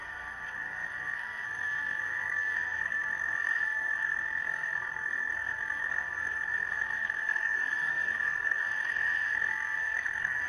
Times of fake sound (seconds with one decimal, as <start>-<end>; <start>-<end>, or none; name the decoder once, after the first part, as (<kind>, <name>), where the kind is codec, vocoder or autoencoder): 0.0-10.5 (codec, SNAC)